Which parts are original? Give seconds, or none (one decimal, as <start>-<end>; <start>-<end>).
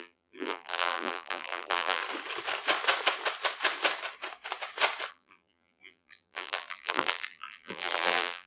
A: 2.0-5.1